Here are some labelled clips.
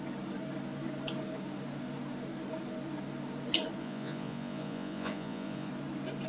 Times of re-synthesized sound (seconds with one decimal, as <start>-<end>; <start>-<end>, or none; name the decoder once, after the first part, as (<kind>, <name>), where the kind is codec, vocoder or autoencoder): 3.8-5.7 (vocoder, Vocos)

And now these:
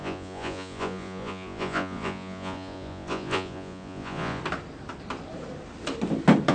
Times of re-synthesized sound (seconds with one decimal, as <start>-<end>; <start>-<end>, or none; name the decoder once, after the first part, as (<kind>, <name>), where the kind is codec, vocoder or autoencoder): 0.0-4.4 (vocoder, Vocos)

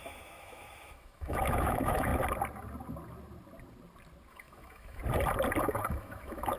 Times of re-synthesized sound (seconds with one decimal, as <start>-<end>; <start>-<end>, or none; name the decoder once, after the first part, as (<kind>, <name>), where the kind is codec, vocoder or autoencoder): 0.0-2.1 (autoencoder, DAC-VAE); 4.3-5.0; 5.6-6.6

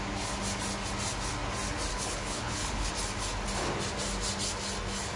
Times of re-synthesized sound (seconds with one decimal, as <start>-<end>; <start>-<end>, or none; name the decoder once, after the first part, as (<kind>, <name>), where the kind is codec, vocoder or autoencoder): 1.9-2.9 (codec, HILCodec)

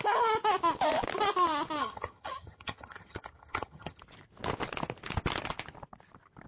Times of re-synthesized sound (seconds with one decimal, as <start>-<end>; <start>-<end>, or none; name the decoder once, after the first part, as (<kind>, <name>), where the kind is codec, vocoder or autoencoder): 1.8-4.0 (vocoder, HiFi-GAN)

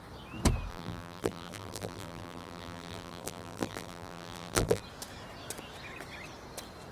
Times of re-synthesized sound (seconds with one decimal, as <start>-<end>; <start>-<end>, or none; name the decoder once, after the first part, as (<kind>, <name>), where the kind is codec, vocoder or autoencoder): 0.7-4.8 (vocoder, BigVGAN v2)

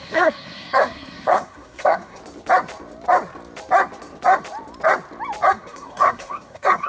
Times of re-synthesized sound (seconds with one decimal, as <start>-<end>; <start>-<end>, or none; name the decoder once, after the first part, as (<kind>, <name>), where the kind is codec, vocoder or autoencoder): 0.0-2.2 (codec, SNAC); 5.5-6.9